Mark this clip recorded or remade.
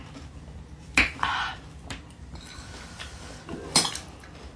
recorded